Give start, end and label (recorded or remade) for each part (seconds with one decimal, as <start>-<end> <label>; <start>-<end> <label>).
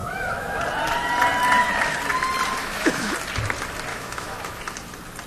0.0-0.6 remade; 0.6-2.6 recorded; 2.6-3.1 remade; 3.1-3.9 recorded; 3.9-4.6 remade; 4.6-5.3 recorded